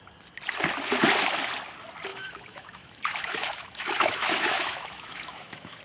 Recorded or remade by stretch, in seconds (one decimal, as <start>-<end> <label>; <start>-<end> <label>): 0.0-2.1 recorded; 2.1-5.8 remade